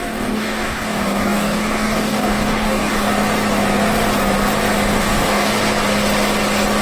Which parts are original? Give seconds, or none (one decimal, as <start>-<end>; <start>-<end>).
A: 3.1-4.9; 5.5-6.8